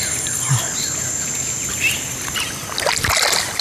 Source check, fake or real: real